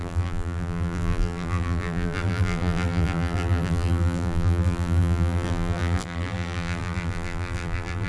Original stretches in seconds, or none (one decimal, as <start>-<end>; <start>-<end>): none